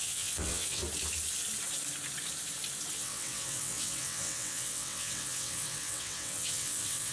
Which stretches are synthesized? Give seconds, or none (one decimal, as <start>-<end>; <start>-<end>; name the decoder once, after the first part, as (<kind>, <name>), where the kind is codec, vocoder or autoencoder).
0.0-0.8 (vocoder, WaveNeXt); 2.9-7.1

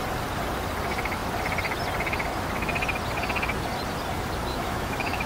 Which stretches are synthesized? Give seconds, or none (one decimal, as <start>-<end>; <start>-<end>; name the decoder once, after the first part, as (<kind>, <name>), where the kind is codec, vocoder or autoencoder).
4.5-5.3 (autoencoder, DAC-VAE)

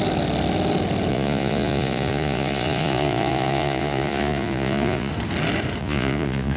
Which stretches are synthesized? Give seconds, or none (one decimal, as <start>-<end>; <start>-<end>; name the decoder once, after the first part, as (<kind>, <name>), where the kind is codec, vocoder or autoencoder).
1.1-5.1 (vocoder, Vocos); 5.8-6.6

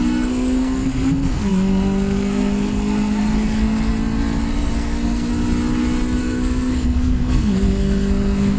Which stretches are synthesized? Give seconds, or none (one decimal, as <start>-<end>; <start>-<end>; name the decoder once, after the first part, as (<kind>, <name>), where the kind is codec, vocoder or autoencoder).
0.0-3.9 (codec, SNAC); 4.4-5.3; 6.2-8.6